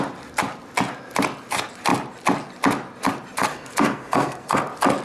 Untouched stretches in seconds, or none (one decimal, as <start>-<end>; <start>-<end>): 0.0-3.5; 4.6-5.0